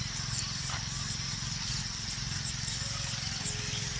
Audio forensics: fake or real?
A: real